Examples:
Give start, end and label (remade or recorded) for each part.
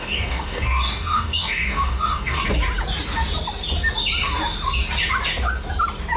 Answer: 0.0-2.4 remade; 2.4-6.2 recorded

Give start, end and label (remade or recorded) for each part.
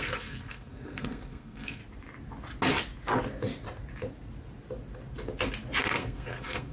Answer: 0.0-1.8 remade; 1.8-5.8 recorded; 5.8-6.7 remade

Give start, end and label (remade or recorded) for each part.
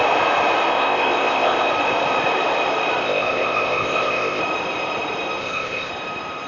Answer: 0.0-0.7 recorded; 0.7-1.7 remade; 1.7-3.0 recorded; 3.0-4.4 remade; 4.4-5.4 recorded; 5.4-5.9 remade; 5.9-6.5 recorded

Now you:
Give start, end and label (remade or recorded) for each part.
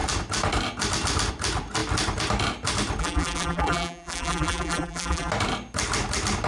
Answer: 0.0-3.0 recorded; 3.0-5.3 remade; 5.3-6.5 recorded